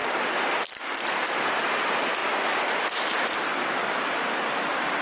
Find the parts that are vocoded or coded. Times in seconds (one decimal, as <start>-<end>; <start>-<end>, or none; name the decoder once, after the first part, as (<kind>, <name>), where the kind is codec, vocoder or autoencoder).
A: 0.0-1.8 (vocoder, BigVGAN v2)